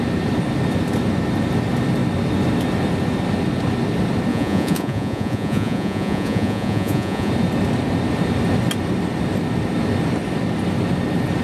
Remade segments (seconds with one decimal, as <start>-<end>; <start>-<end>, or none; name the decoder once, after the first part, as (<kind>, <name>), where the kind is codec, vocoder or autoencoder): 4.3-7.3 (vocoder, Vocos)